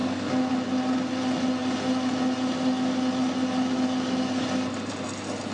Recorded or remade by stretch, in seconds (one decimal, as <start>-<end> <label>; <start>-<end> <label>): 0.0-5.5 recorded